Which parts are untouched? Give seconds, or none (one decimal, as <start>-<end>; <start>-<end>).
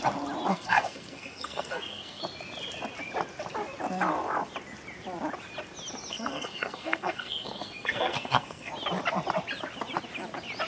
0.0-0.5; 2.2-6.1; 8.7-10.7